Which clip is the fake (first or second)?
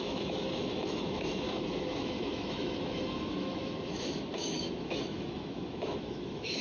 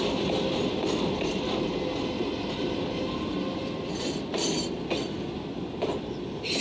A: first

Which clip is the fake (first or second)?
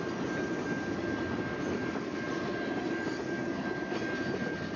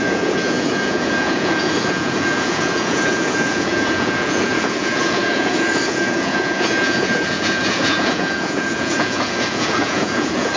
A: second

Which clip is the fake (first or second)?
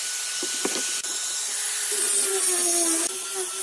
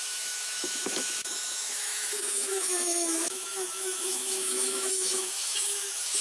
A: second